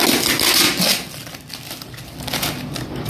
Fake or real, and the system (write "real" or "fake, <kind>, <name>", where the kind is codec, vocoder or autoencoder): real